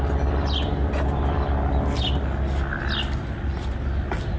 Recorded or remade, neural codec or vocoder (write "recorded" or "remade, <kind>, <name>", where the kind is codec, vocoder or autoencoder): recorded